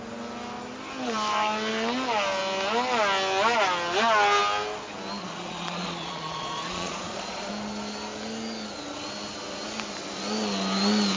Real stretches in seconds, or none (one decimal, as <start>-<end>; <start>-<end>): 0.0-5.2; 7.5-11.2